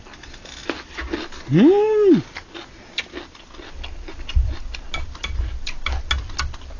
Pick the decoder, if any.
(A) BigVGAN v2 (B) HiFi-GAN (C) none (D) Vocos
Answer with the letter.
C